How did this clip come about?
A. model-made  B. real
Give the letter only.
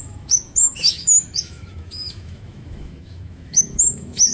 A